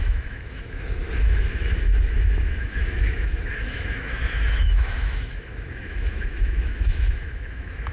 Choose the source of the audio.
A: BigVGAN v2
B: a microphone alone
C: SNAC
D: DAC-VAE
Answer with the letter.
D